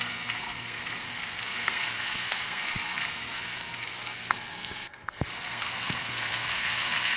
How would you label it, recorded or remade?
remade